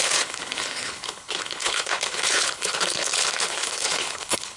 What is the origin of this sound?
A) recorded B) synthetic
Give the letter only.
B